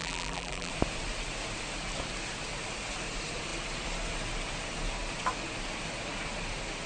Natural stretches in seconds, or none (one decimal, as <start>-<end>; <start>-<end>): 0.7-6.9